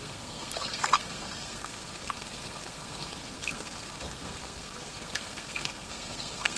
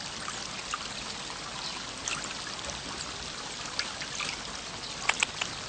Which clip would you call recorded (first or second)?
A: second